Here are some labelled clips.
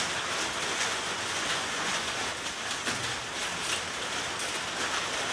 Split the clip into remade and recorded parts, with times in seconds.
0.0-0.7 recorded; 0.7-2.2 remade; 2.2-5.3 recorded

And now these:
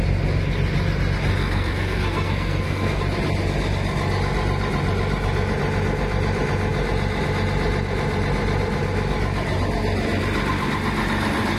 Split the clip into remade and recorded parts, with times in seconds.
0.0-1.4 recorded; 1.4-3.0 remade; 3.0-11.6 recorded

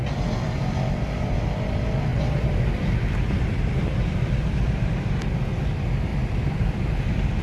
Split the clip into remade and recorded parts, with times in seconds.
0.0-7.4 recorded

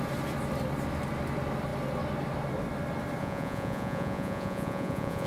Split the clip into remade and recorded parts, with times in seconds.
0.0-3.2 recorded; 3.2-5.3 remade

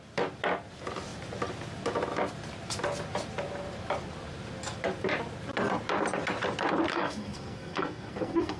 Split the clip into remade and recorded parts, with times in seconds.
0.0-6.9 recorded; 6.9-8.6 remade

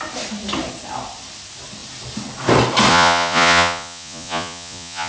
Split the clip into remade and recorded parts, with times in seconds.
0.0-2.9 recorded; 2.9-5.1 remade

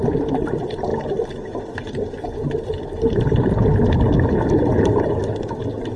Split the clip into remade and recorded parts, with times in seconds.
0.0-6.0 recorded